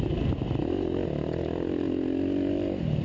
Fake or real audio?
real